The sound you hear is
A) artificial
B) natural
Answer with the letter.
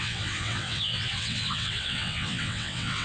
A